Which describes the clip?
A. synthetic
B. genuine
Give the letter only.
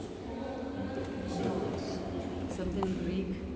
B